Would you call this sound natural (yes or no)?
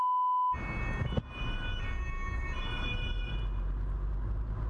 yes